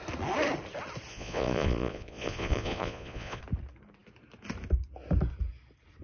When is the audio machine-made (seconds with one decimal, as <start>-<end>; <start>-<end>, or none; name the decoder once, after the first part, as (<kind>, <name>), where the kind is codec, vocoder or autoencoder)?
1.1-3.4 (vocoder, Vocos)